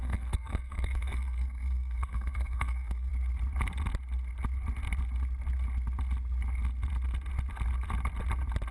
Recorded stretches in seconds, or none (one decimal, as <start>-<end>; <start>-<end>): 3.1-8.7